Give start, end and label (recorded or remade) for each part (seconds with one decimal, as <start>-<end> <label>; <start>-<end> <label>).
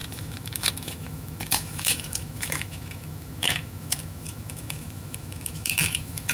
0.0-6.3 remade